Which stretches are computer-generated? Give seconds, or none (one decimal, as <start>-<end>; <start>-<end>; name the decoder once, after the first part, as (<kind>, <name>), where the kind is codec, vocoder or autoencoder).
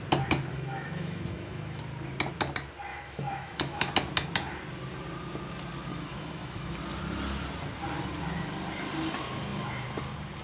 0.5-1.8 (autoencoder, DAC-VAE); 2.9-3.9; 5.9-6.8